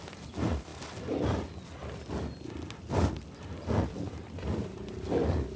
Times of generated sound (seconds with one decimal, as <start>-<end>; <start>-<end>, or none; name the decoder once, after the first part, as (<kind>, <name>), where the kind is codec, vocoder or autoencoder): none